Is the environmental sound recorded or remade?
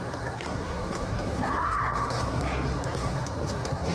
remade